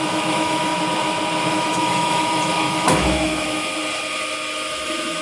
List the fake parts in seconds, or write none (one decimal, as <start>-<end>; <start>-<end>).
0.0-0.7; 1.5-3.7; 4.7-5.2